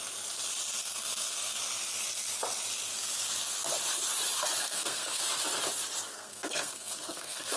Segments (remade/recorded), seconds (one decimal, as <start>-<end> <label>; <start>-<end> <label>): 0.0-0.8 recorded; 0.8-1.6 remade; 1.6-4.6 recorded; 4.6-5.2 remade; 5.2-6.1 recorded; 6.1-7.6 remade